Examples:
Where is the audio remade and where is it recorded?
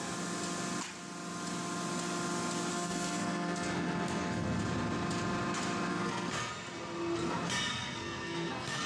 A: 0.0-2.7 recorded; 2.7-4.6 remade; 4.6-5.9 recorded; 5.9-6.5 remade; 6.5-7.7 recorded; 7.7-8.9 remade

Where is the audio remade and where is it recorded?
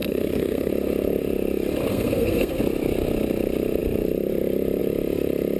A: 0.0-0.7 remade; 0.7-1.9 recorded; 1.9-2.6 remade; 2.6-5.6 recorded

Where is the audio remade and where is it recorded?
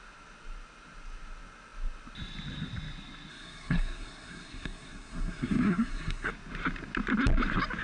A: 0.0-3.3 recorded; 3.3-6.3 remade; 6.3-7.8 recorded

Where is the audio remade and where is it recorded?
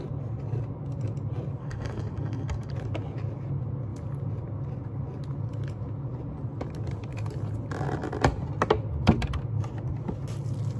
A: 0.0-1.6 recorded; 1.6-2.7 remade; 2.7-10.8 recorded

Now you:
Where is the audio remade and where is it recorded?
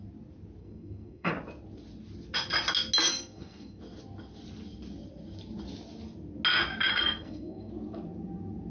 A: 0.0-0.6 recorded; 0.6-1.3 remade; 1.3-3.1 recorded; 3.1-3.8 remade; 3.8-6.9 recorded; 6.9-7.7 remade; 7.7-8.7 recorded